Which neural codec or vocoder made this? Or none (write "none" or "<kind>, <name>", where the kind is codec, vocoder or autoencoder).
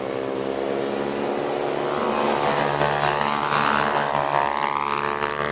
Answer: none